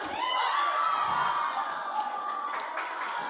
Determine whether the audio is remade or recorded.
remade